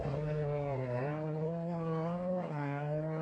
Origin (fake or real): fake